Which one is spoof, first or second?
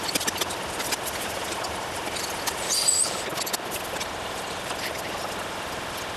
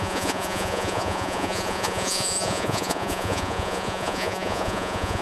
second